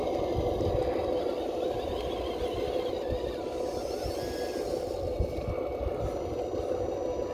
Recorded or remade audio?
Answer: recorded